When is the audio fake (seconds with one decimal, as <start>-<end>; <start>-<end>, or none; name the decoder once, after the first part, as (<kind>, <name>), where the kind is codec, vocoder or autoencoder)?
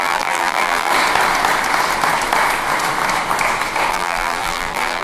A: 0.0-0.9 (vocoder, BigVGAN v2); 3.9-5.0